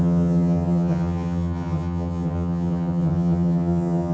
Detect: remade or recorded remade